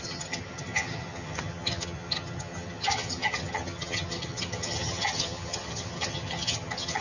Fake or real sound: fake